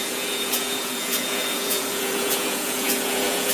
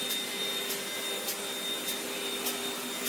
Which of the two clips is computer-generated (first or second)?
first